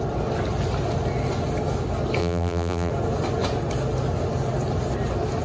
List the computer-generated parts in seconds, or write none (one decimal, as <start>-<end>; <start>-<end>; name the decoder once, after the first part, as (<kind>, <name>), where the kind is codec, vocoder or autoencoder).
2.2-2.9 (vocoder, BigVGAN v2)